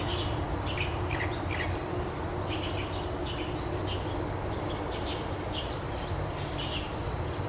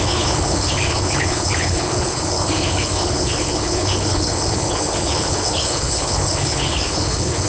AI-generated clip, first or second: second